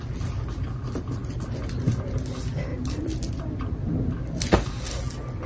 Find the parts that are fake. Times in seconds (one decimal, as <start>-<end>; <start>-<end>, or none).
2.7-3.4